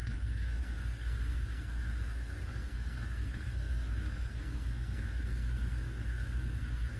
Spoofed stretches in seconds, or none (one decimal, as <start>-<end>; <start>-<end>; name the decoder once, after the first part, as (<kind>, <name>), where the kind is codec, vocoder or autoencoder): 0.0-7.0 (codec, SNAC)